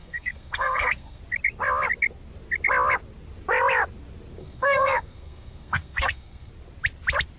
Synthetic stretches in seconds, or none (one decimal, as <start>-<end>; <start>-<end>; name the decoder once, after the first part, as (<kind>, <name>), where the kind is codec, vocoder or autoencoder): 0.0-1.2 (codec, SNAC); 4.4-6.5